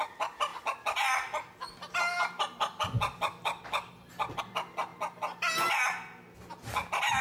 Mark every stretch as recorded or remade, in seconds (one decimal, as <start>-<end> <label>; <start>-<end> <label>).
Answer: 0.0-7.2 recorded